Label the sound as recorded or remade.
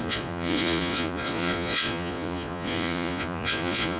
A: remade